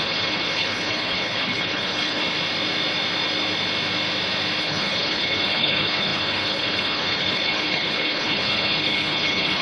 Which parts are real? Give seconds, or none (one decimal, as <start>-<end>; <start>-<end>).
2.2-4.6